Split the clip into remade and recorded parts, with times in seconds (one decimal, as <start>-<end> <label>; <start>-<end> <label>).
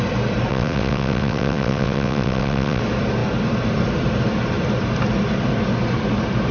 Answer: 0.0-0.5 recorded; 0.5-2.8 remade; 2.8-6.5 recorded